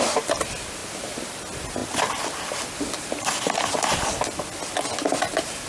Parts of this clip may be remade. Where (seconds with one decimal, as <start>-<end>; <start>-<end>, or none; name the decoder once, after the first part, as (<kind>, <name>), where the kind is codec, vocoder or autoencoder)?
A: none